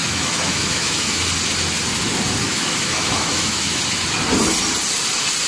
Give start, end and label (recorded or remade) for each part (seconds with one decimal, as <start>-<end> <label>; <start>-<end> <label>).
0.0-1.2 remade; 1.2-2.4 recorded; 2.4-3.8 remade; 3.8-5.5 recorded